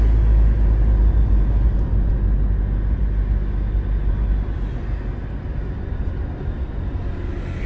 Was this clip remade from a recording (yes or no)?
no